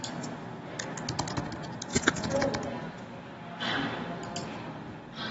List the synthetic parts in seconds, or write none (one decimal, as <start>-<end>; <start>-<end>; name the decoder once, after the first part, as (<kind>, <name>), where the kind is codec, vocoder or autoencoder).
1.9-2.5 (vocoder, Vocos)